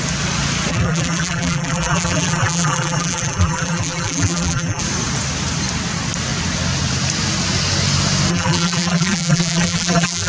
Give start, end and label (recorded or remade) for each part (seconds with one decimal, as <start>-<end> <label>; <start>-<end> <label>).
0.0-0.7 recorded; 0.7-4.8 remade; 4.8-8.3 recorded; 8.3-10.3 remade